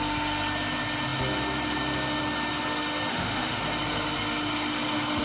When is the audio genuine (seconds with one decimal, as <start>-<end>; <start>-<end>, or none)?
0.0-3.1; 3.6-5.2